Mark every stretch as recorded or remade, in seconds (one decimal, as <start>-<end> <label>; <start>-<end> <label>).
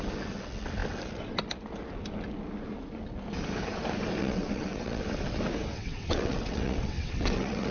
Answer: 0.0-4.2 recorded; 4.2-5.0 remade; 5.0-5.7 recorded; 5.7-7.7 remade